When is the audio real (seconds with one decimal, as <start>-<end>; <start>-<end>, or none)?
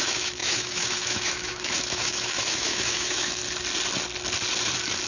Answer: 3.4-5.1